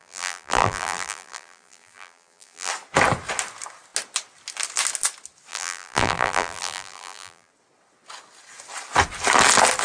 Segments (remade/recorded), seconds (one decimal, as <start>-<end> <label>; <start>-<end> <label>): 0.0-2.7 remade; 2.7-5.5 recorded; 5.5-7.5 remade; 7.5-9.8 recorded